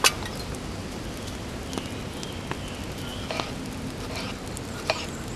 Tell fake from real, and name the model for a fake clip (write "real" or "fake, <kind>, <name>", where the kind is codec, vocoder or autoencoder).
real